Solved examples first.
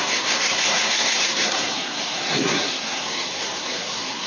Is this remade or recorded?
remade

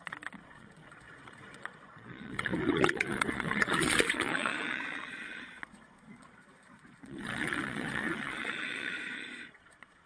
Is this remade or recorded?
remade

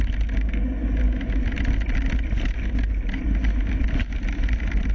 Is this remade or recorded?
recorded